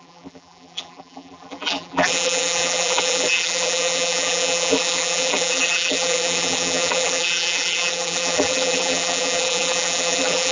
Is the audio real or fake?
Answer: fake